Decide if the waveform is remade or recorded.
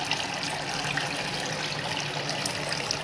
recorded